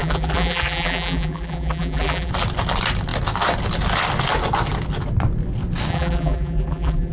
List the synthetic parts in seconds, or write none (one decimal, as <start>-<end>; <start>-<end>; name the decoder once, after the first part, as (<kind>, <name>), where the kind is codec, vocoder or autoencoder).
0.0-2.3 (vocoder, BigVGAN v2); 5.9-7.1